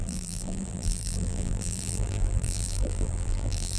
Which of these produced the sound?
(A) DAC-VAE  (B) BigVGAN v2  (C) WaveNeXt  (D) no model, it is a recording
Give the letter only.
B